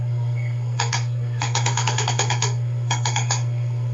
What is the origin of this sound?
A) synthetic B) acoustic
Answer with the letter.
A